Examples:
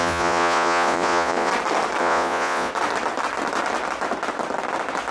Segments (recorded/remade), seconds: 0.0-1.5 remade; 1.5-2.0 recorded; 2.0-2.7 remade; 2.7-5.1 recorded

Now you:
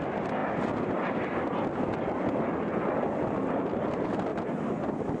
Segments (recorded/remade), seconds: 0.0-4.3 recorded; 4.3-4.8 remade; 4.8-5.2 recorded

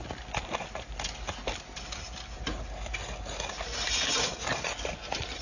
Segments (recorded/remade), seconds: 0.0-5.4 recorded